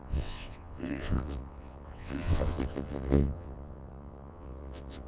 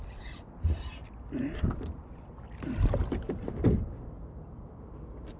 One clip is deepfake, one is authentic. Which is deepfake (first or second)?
first